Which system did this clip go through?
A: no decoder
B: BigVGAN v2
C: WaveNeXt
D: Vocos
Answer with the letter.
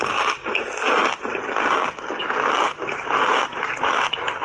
A